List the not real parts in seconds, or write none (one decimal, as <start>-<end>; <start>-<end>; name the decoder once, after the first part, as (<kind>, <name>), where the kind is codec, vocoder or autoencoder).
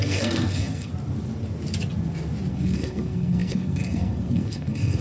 0.0-0.9 (codec, SNAC); 2.5-5.0